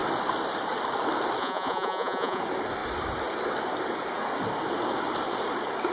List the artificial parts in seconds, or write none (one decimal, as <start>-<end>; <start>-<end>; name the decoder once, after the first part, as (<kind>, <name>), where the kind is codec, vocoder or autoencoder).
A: 1.4-2.4 (vocoder, Vocos)